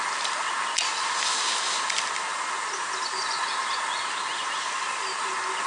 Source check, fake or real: real